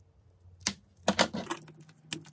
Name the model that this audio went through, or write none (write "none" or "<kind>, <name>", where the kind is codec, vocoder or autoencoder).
none